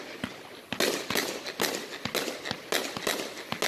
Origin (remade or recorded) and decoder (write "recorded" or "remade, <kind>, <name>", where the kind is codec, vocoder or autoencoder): recorded